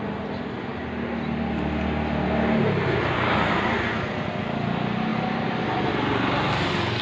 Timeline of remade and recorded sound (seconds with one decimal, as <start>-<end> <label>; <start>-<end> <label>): 0.0-7.0 recorded